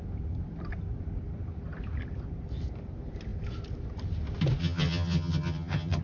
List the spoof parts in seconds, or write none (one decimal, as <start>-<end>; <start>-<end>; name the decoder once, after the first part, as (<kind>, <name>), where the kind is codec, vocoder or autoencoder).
4.6-6.0 (vocoder, HiFi-GAN)